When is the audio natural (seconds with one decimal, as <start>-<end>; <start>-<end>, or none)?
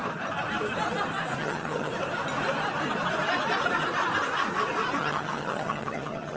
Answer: 0.0-1.4; 1.9-5.0